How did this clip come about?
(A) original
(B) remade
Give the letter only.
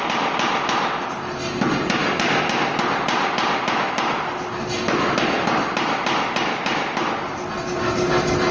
A